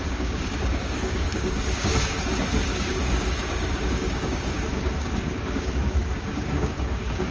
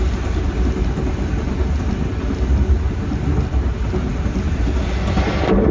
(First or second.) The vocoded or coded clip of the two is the first